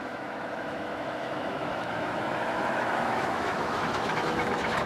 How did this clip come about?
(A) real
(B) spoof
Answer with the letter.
B